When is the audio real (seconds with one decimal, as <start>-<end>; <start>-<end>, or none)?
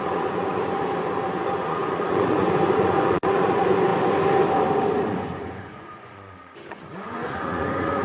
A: 3.9-5.1